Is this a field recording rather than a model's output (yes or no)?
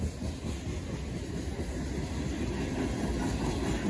yes